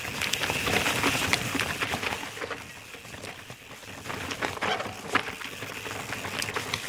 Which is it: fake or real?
real